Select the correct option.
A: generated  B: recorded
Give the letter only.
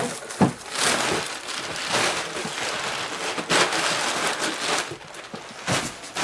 B